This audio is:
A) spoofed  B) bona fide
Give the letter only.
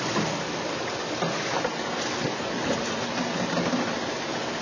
B